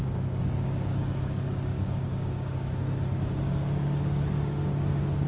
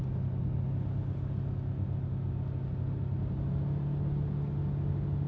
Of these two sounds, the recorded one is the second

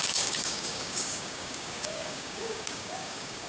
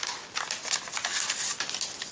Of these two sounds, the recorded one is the second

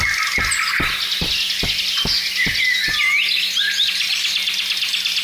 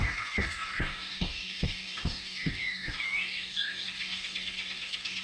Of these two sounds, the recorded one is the first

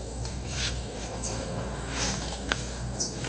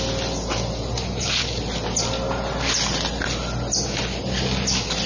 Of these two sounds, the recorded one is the second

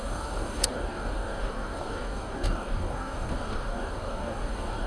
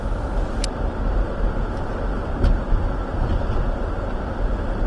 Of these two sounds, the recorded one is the second